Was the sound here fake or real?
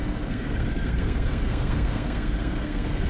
fake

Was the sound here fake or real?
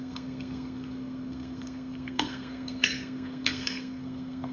fake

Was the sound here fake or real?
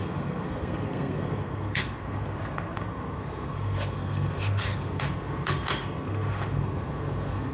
fake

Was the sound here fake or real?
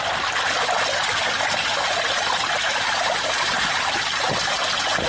real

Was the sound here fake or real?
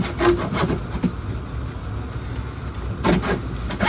real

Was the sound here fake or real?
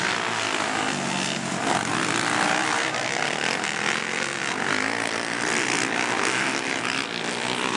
real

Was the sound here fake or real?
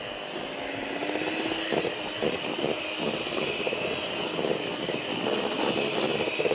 real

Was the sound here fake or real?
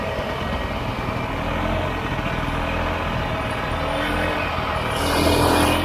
real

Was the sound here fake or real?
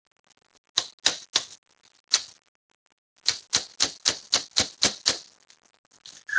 real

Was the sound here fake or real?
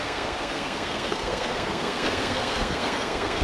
fake